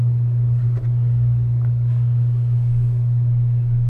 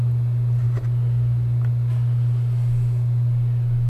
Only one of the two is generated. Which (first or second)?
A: first